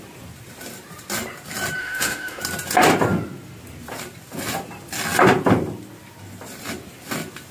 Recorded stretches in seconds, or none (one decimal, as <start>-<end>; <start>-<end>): 0.0-1.8; 2.4-7.5